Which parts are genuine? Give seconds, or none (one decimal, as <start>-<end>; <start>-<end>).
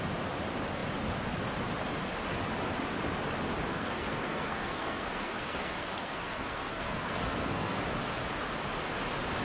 0.0-3.7; 7.8-9.4